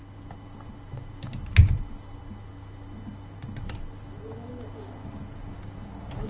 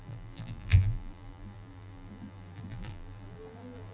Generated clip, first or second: second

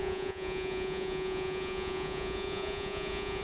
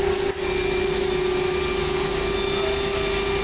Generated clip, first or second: first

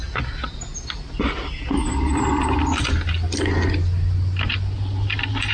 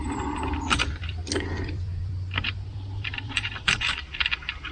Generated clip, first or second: second